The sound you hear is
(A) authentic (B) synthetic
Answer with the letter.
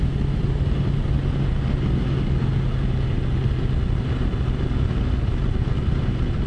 A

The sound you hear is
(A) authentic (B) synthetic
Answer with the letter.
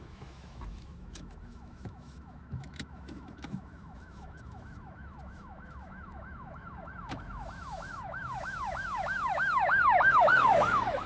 B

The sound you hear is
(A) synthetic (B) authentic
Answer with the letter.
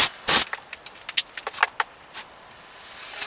B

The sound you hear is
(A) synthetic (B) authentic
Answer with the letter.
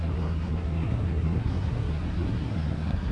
A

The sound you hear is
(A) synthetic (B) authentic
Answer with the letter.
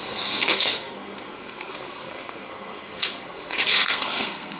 A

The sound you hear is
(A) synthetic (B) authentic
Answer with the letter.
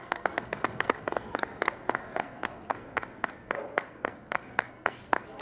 A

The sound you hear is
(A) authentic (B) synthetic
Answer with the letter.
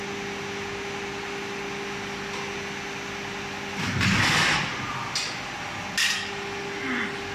A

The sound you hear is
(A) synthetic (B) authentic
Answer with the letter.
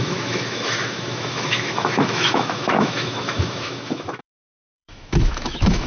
A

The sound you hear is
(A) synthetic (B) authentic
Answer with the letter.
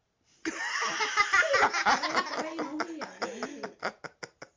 B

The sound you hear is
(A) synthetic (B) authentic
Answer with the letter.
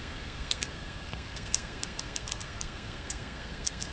A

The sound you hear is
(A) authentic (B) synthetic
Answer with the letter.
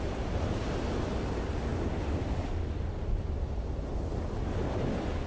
A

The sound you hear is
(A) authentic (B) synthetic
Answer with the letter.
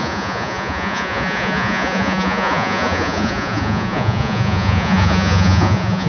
B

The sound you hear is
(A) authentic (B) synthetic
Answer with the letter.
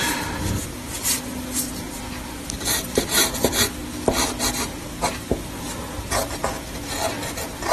A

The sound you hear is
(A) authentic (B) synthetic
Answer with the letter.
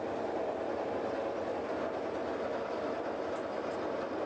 A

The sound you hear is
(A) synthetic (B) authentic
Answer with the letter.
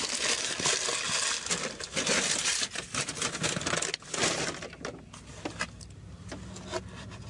B